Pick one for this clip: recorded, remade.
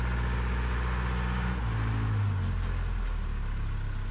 recorded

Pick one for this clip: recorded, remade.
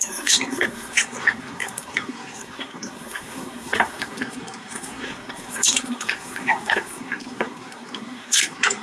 remade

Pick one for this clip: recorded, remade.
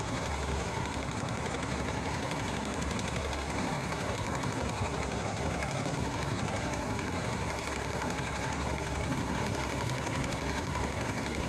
remade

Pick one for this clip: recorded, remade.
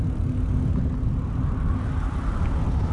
recorded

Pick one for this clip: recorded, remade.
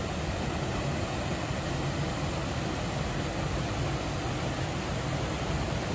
recorded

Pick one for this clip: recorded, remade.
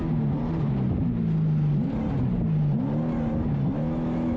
recorded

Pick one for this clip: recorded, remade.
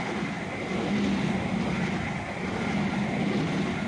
recorded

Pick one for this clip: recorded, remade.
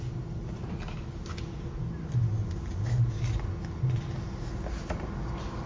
recorded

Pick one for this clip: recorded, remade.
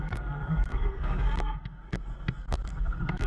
remade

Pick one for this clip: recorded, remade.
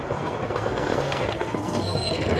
remade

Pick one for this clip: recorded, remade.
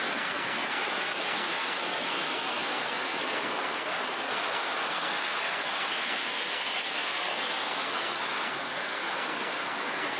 remade